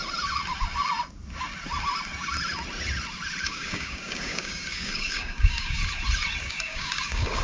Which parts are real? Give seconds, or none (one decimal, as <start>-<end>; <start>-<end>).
0.0-3.4; 5.8-6.4